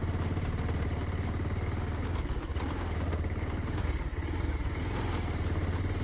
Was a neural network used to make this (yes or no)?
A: no